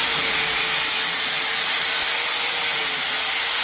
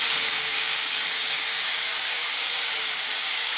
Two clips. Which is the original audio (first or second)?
first